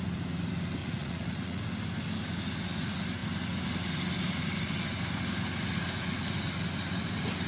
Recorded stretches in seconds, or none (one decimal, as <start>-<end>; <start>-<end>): 0.0-0.8; 1.6-7.5

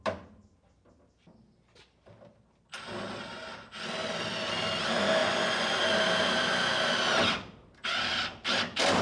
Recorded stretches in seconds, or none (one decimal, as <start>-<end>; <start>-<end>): 0.0-5.2; 5.8-9.0

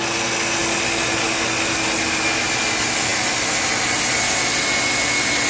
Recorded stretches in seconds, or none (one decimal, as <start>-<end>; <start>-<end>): 0.0-5.5

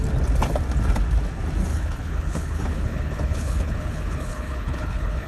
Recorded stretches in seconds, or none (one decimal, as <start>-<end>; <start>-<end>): 0.0-1.7

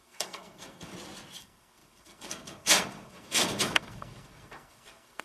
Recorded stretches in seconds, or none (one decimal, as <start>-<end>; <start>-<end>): 0.9-1.4

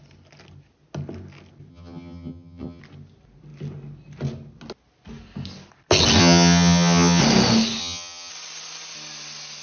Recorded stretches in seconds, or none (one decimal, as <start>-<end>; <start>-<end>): 0.0-1.7; 2.8-6.2; 7.2-7.8; 8.3-9.6

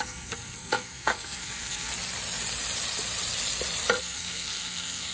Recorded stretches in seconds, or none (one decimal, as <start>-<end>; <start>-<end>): 1.9-4.0